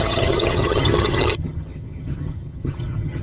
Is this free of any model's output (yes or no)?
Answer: no